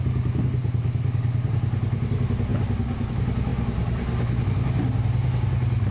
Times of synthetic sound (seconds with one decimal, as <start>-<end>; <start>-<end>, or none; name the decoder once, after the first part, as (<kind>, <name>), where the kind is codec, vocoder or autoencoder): none